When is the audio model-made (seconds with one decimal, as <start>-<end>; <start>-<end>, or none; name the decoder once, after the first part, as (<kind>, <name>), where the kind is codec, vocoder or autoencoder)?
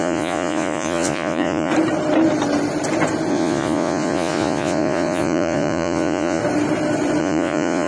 0.0-1.7 (vocoder, Vocos); 3.3-6.4; 7.2-7.9